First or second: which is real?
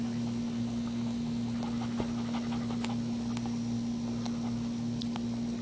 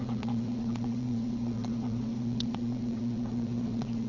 first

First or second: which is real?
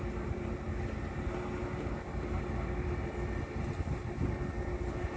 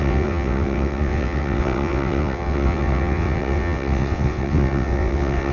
first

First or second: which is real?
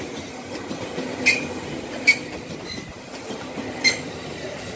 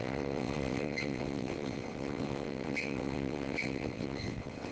first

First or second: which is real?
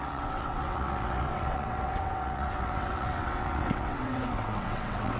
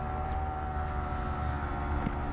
second